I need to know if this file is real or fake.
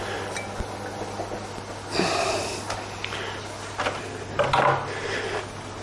real